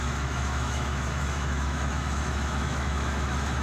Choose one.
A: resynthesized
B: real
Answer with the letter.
A